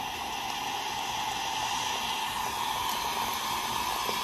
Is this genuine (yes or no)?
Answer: yes